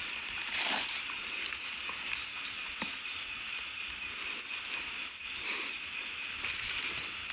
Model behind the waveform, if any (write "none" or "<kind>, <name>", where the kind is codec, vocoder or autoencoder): none